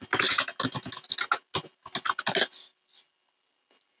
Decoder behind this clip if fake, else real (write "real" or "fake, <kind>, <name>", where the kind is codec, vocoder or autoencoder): real